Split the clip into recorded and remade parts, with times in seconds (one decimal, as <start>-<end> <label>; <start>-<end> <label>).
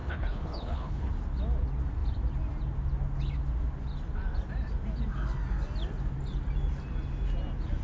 0.0-1.1 remade; 1.1-7.8 recorded